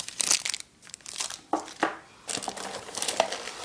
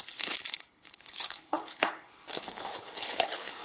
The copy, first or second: second